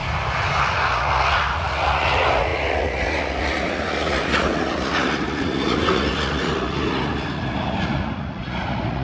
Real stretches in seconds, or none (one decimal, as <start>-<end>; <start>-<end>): 0.0-0.6